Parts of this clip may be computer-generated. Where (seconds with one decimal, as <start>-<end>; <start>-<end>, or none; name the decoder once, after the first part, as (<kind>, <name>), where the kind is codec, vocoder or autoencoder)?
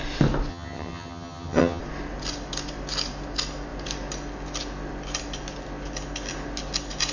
0.5-1.8 (vocoder, HiFi-GAN)